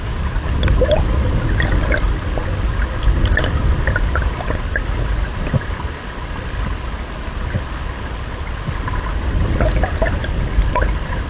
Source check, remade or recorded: recorded